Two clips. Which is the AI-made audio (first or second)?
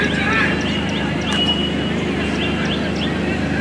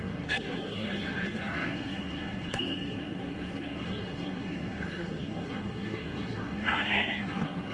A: second